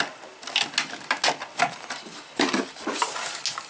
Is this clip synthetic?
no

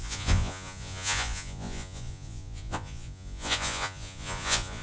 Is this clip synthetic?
yes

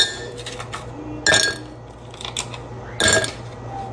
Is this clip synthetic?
no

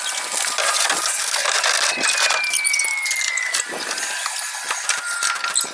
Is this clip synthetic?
no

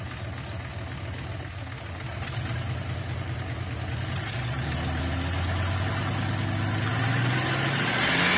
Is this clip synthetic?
no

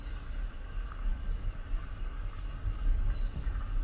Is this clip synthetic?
no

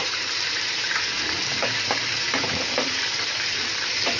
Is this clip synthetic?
yes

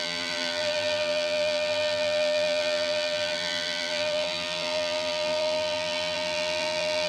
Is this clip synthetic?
yes